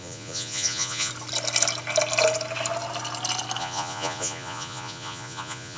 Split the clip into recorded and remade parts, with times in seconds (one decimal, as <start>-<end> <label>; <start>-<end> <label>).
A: 0.0-1.1 remade; 1.1-3.6 recorded; 3.6-5.8 remade

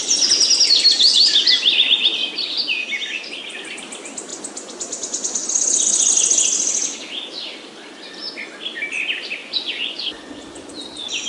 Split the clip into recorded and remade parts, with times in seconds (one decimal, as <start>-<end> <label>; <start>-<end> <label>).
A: 0.0-4.3 recorded; 4.3-6.1 remade; 6.1-9.4 recorded; 9.4-10.7 remade; 10.7-11.3 recorded